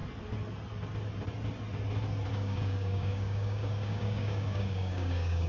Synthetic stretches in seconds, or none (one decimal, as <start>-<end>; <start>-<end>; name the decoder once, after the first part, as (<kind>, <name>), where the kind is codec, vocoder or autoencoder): 2.3-5.5 (codec, DAC)